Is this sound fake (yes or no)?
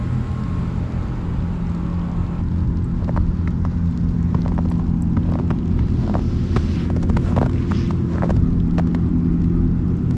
no